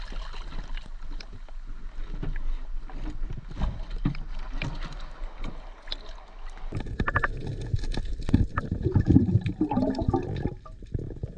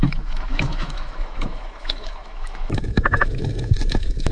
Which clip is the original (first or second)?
first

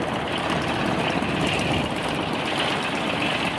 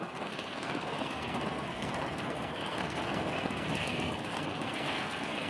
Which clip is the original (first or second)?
first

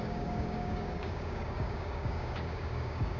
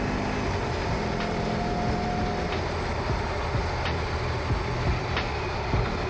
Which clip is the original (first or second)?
second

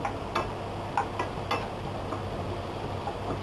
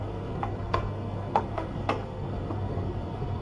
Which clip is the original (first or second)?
first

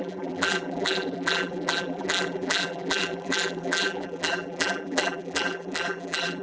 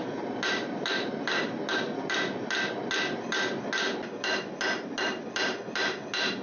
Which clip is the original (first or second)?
second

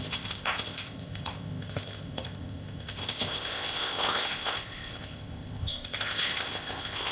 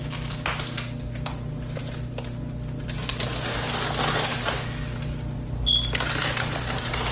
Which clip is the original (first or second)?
second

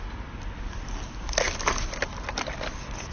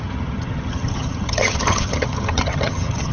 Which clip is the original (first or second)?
first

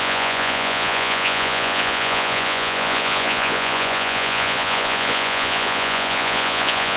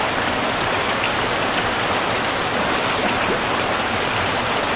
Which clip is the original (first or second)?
second